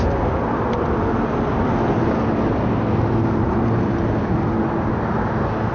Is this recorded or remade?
recorded